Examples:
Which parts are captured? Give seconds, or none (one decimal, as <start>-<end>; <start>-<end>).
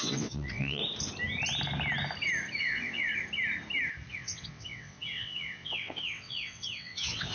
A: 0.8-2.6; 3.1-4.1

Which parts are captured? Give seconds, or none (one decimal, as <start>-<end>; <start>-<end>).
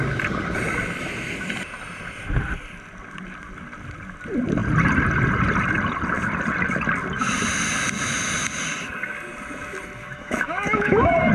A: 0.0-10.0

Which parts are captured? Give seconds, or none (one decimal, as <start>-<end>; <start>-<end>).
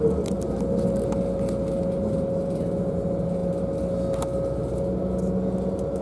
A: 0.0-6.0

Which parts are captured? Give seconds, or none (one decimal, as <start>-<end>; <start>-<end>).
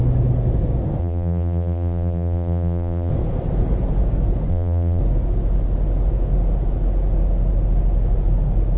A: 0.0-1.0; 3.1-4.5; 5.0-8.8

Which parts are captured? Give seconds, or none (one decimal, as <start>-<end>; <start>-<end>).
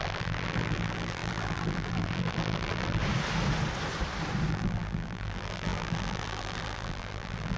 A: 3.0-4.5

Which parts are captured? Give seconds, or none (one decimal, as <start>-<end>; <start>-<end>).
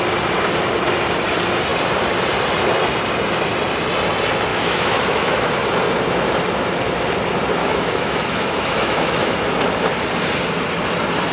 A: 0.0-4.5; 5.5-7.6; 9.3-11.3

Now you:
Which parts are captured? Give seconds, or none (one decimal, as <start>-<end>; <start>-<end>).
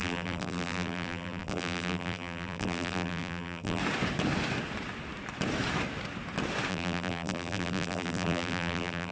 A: 3.8-6.7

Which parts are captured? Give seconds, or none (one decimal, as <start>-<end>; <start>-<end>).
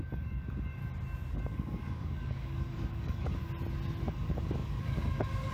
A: 0.8-1.3; 3.4-4.1